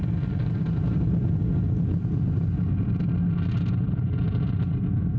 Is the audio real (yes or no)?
yes